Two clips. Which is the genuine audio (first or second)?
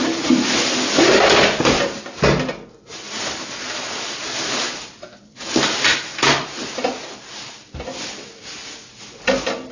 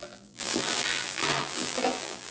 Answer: first